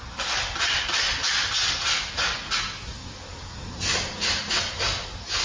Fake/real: real